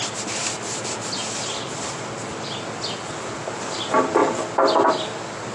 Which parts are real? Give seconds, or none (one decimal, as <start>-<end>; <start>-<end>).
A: 1.2-3.7; 4.2-4.9